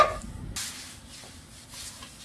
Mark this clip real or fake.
real